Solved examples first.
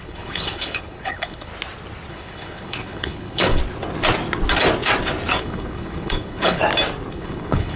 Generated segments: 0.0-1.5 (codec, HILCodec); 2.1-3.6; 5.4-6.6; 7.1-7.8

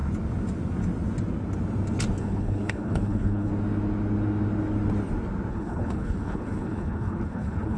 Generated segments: 2.2-3.5 (codec, HILCodec); 5.5-7.8